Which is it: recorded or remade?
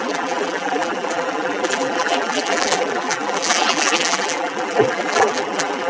remade